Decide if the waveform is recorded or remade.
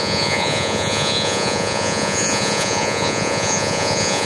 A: remade